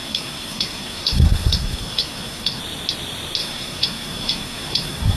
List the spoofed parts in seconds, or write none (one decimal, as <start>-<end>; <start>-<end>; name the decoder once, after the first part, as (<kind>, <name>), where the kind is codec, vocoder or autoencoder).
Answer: 0.0-2.6 (codec, SNAC); 3.4-5.2